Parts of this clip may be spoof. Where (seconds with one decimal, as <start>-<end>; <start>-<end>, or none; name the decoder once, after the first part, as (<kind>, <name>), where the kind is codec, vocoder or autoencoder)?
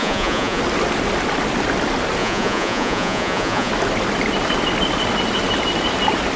0.0-0.6 (vocoder, Vocos); 2.2-3.7